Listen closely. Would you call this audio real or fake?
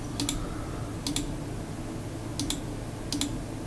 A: real